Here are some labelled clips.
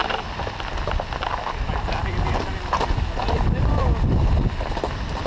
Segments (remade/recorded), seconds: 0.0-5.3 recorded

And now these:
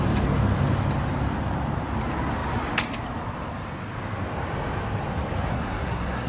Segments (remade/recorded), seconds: 0.0-5.5 recorded; 5.5-6.3 remade

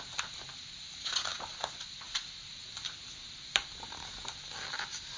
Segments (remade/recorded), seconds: 0.0-5.2 recorded